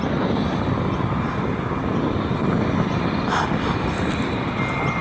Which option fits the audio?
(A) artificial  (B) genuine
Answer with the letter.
B